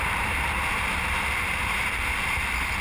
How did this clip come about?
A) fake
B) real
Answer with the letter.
A